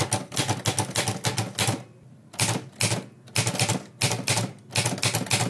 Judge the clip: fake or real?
real